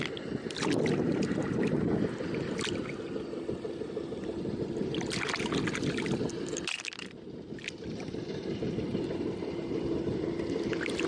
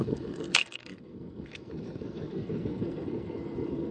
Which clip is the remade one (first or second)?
second